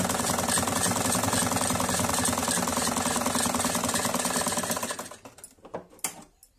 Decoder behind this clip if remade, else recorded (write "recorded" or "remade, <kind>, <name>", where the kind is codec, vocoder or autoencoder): recorded